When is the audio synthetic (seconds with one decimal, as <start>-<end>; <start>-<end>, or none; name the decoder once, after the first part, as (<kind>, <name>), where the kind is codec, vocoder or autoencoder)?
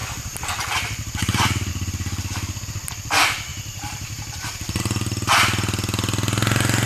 0.0-1.7 (vocoder, BigVGAN v2); 3.5-4.8